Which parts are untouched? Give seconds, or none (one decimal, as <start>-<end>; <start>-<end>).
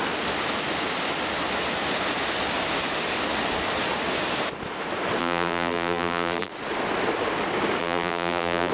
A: 0.0-5.2; 6.5-7.8